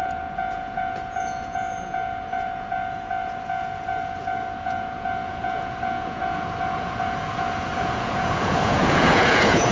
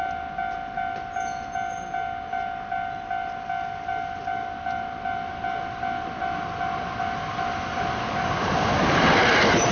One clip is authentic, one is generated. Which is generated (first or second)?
first